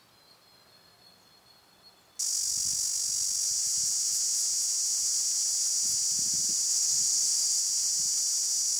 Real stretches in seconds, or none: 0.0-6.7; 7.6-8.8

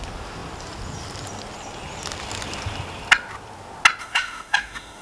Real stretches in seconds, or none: 0.0-4.0

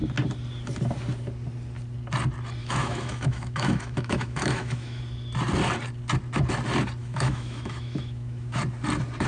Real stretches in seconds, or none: 0.0-2.6; 5.0-7.0; 8.6-9.3

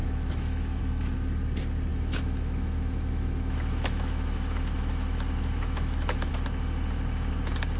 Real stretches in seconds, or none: 0.8-1.9; 6.3-7.8